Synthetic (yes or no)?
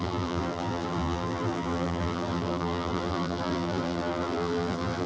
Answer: yes